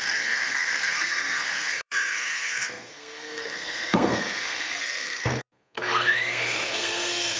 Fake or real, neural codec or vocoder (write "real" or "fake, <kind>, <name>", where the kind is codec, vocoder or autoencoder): fake, codec, SNAC